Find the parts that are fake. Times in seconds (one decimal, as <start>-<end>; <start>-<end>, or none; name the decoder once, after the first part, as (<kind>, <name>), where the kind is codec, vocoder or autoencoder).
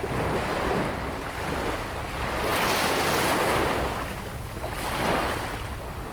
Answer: none